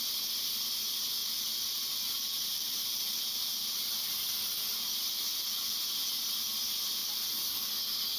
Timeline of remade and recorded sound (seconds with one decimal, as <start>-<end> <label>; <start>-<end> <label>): 0.0-1.2 recorded; 1.2-4.1 remade; 4.1-5.3 recorded; 5.3-5.8 remade; 5.8-7.0 recorded; 7.0-7.7 remade; 7.7-8.2 recorded